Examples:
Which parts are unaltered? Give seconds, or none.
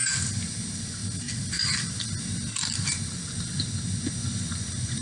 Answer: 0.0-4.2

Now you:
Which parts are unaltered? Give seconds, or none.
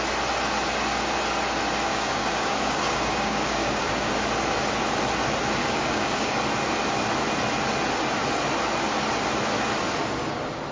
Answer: 0.0-1.9; 4.1-5.6; 6.3-10.7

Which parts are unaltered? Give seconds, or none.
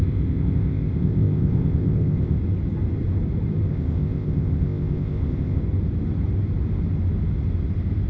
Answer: 2.4-3.7; 5.6-8.1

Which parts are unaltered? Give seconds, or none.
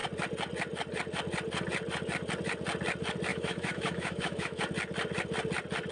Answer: 0.0-3.3; 4.6-5.9